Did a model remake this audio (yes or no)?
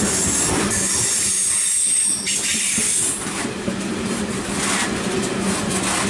no